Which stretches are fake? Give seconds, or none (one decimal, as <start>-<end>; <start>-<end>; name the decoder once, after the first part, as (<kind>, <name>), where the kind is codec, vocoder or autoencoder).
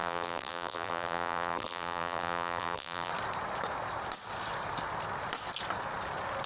0.0-3.1 (vocoder, BigVGAN v2)